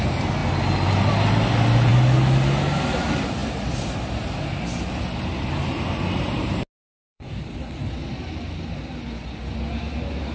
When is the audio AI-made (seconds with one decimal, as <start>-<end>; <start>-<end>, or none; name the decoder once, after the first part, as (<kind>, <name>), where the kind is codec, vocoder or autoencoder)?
6.8-7.4 (codec, DAC)